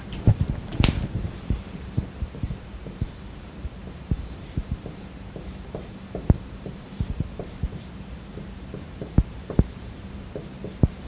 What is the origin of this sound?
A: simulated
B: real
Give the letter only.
A